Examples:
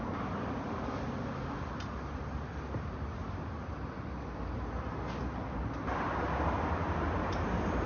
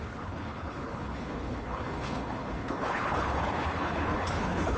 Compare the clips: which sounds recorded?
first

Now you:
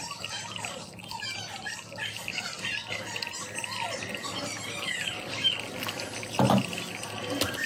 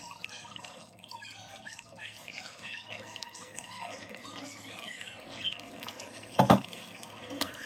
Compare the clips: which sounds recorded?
first